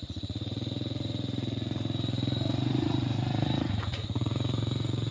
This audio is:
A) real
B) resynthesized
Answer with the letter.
B